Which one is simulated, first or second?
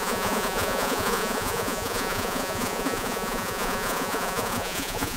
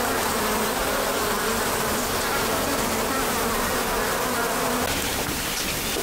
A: first